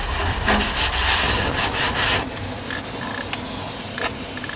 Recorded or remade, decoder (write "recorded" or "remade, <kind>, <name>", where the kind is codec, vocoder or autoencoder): recorded